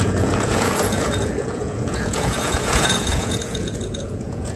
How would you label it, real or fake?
fake